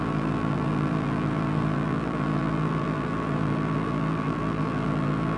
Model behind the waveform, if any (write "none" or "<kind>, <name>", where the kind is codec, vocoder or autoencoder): vocoder, BigVGAN v2